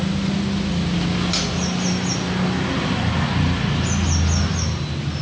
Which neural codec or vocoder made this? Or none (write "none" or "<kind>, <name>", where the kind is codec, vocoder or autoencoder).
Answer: none